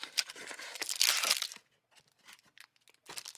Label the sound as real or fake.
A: real